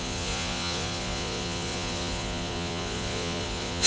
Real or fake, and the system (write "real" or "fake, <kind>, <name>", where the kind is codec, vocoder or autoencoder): fake, vocoder, Vocos